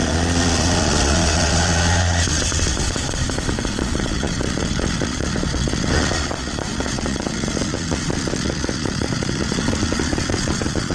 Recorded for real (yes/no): no